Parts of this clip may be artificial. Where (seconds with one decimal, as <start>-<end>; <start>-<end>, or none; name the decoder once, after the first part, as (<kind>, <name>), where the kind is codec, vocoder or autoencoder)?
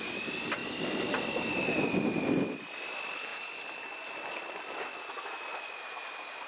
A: 0.6-1.7 (vocoder, BigVGAN v2)